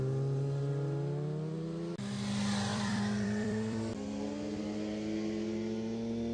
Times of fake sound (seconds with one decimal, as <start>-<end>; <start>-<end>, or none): 2.7-3.9